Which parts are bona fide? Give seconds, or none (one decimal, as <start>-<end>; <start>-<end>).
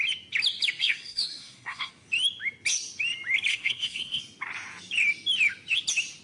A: 0.0-0.8; 1.9-3.5; 4.2-6.2